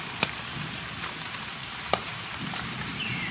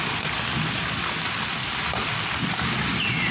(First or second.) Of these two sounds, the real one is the second